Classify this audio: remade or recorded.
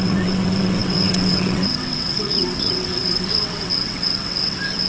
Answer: remade